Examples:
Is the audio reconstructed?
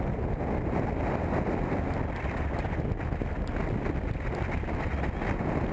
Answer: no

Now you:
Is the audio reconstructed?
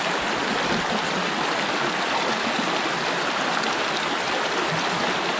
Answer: no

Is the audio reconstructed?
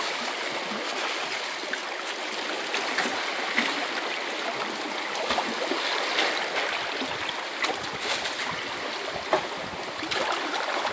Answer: no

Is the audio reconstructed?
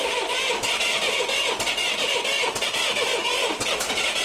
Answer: no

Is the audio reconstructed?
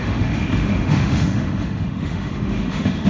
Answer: yes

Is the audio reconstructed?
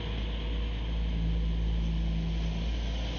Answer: no